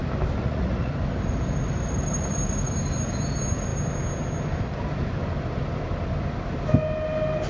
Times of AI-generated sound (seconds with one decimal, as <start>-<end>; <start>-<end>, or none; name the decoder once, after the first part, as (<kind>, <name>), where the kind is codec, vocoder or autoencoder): 0.4-0.9 (vocoder, Vocos)